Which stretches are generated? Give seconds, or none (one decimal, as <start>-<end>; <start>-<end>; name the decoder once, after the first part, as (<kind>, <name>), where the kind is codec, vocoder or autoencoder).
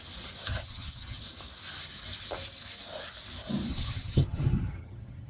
0.5-1.2 (vocoder, HiFi-GAN); 3.7-5.3